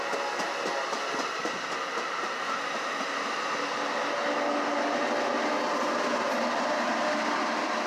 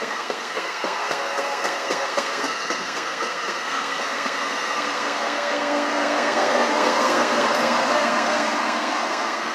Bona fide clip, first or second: first